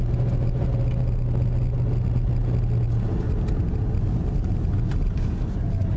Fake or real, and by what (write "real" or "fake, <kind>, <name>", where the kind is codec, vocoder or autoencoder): real